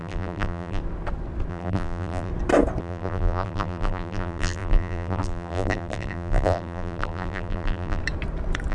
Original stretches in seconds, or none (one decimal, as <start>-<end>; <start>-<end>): 0.8-1.5; 2.3-2.8; 8.0-8.7